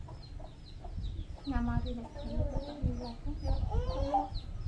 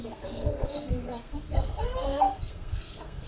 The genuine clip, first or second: first